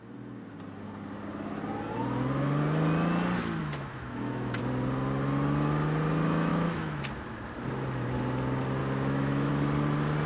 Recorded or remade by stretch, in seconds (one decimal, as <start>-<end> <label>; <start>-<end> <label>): 0.0-3.6 recorded; 3.6-4.6 remade; 4.6-6.5 recorded; 6.5-7.0 remade; 7.0-8.8 recorded; 8.8-9.5 remade; 9.5-10.3 recorded